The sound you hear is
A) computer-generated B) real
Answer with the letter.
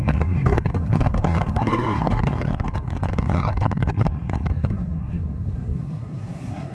A